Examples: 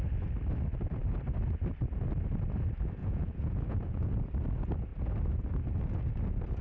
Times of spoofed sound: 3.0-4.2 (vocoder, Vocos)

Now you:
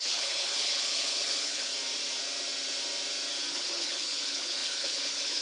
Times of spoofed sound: 0.0-1.7 (codec, HILCodec); 3.5-5.4

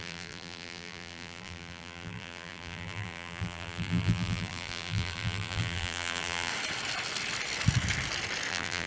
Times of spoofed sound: 0.0-6.5 (vocoder, BigVGAN v2); 8.5-8.9

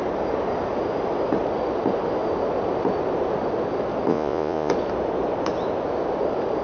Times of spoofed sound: 4.1-4.7 (vocoder, Vocos)

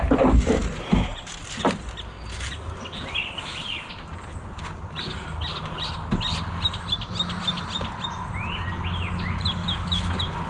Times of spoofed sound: 9.6-10.5 (autoencoder, DAC-VAE)

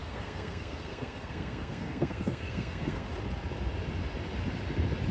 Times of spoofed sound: 0.0-3.1 (codec, SNAC)

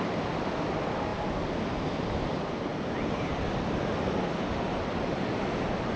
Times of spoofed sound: none